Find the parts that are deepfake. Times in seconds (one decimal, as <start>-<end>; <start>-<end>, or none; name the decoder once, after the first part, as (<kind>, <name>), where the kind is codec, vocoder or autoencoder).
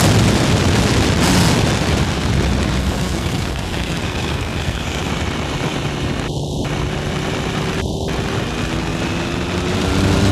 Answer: 2.8-5.1 (codec, SNAC)